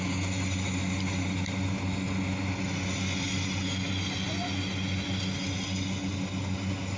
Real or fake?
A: real